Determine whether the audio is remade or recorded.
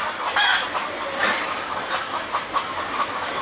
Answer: recorded